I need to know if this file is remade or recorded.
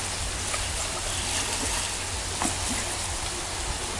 recorded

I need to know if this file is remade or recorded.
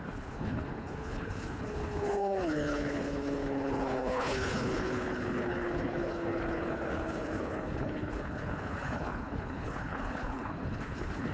remade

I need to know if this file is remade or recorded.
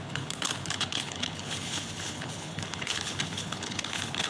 remade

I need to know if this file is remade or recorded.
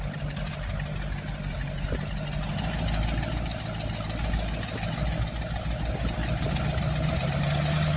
recorded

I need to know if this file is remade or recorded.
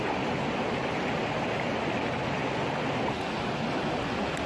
recorded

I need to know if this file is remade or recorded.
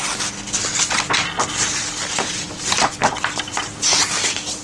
recorded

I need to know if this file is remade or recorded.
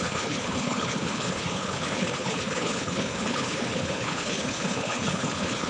remade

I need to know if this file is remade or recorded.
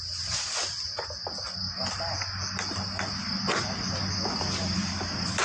recorded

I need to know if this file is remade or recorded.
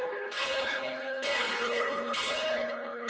remade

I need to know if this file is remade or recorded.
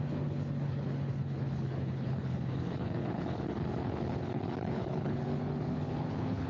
remade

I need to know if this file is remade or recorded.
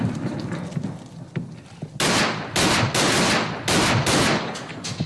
recorded